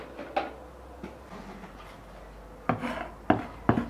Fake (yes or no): no